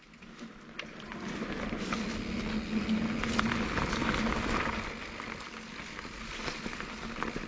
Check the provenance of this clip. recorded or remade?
recorded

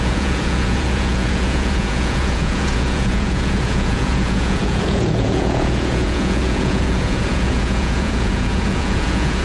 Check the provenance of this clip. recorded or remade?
remade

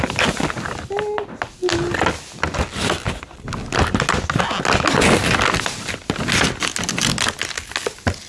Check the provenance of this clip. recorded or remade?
recorded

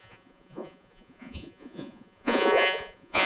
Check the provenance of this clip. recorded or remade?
remade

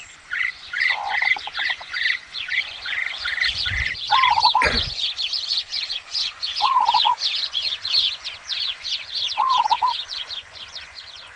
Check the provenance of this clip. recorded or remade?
remade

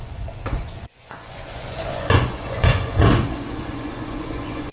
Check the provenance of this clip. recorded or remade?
remade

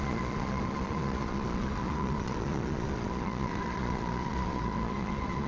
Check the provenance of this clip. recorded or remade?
remade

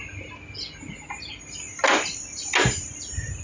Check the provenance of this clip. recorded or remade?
recorded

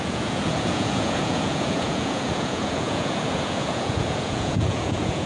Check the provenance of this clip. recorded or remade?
remade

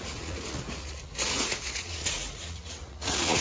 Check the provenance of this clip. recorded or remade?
remade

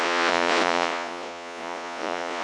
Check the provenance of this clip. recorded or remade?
remade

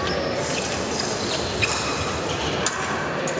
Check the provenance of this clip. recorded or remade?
recorded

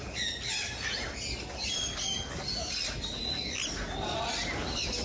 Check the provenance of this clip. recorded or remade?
recorded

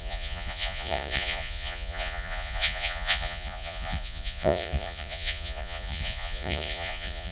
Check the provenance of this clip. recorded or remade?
remade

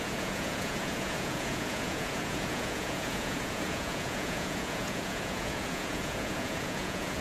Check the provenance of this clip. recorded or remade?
remade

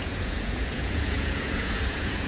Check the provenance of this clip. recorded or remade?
remade